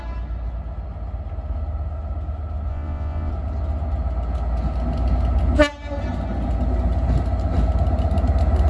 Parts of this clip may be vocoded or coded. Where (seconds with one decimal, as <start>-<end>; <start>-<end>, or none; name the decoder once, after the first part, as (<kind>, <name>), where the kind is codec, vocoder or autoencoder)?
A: 2.7-3.3 (vocoder, Vocos)